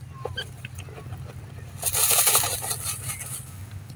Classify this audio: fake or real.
real